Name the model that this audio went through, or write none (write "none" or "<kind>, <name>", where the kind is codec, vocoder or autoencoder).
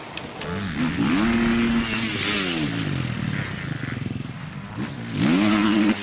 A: none